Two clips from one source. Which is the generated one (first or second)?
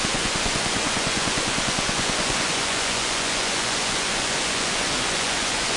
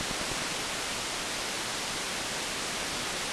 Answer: first